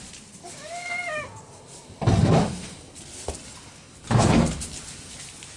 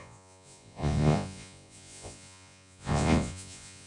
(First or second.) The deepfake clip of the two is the second